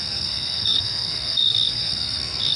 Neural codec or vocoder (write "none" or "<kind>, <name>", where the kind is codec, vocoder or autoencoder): codec, SNAC